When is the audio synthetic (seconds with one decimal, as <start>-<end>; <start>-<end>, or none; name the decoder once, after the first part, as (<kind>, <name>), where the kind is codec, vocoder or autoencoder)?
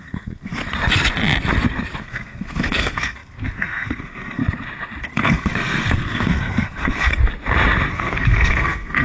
0.0-0.6 (codec, SNAC); 2.0-4.4; 5.0-7.2; 7.9-9.0